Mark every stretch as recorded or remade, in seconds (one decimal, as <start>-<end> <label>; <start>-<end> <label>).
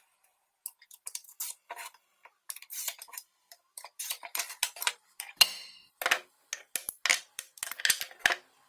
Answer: 0.0-1.2 recorded; 1.2-5.9 remade; 5.9-7.1 recorded; 7.1-7.8 remade; 7.8-8.7 recorded